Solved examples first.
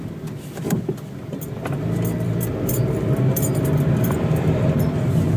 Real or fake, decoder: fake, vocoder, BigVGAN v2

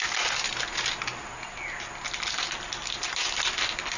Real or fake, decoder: real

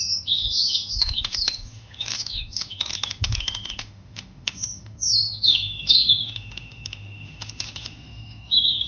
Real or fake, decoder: fake, autoencoder, DAC-VAE